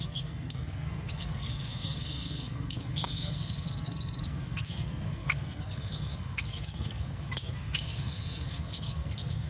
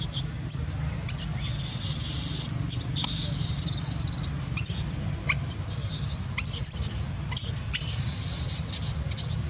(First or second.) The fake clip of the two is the first